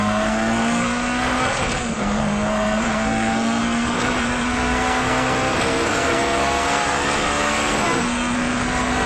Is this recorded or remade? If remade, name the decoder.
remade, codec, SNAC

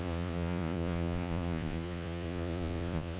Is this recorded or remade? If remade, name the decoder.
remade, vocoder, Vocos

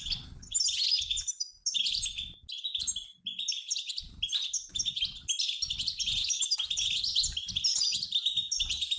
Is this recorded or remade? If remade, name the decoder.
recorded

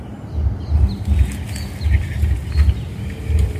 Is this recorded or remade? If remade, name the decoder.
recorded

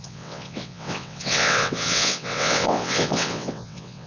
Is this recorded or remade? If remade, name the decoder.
remade, vocoder, WaveNeXt